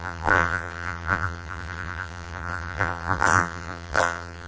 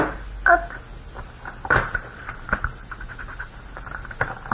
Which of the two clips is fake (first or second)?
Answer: first